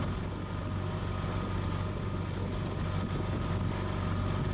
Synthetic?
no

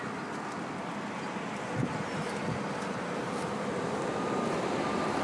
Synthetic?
no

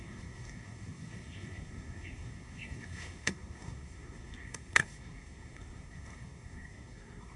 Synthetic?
yes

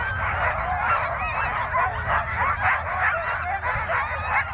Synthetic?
no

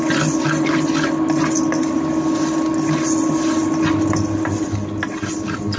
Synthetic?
no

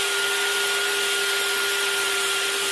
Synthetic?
no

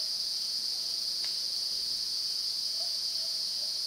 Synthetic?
yes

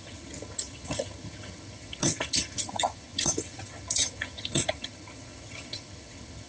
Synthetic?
yes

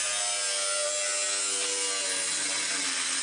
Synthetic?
no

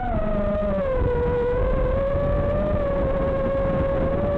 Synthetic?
no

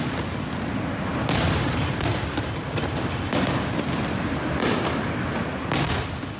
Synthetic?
no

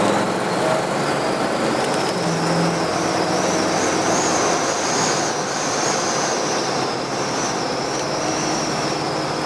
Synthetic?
no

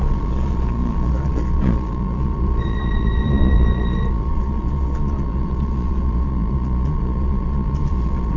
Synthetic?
yes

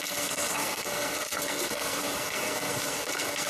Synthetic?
yes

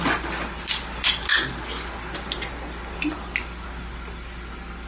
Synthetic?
no